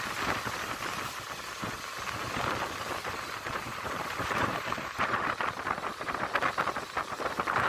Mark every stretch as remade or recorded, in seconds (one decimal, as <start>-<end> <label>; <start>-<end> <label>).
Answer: 0.0-3.7 recorded; 3.7-5.2 remade; 5.2-7.7 recorded